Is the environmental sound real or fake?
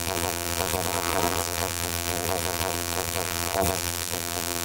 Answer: fake